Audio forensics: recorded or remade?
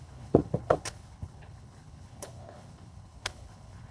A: remade